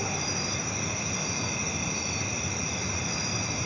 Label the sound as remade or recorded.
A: recorded